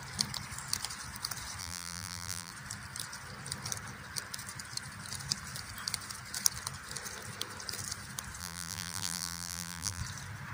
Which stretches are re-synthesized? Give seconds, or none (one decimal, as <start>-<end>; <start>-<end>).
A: 1.6-2.5; 8.4-10.0